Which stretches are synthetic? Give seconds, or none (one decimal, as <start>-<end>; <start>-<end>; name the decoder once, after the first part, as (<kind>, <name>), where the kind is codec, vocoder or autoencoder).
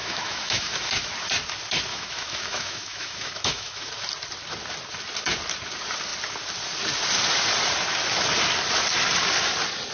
0.0-1.1 (autoencoder, DAC-VAE); 1.9-3.9